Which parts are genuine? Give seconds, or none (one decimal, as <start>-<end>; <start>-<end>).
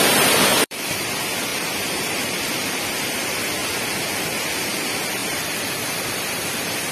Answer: 0.0-0.5; 1.1-1.5; 2.8-5.2; 6.0-6.9